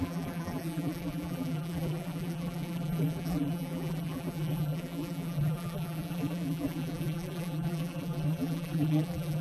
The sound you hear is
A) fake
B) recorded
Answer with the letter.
A